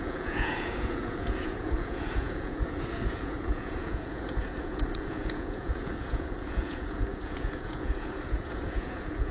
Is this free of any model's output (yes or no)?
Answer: no